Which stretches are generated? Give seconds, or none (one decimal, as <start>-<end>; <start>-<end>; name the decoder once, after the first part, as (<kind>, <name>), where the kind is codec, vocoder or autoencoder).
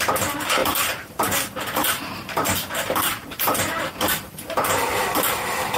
0.6-3.9 (vocoder, BigVGAN v2); 4.9-5.8